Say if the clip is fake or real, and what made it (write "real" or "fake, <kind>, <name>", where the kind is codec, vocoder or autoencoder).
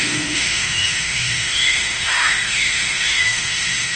fake, autoencoder, DAC-VAE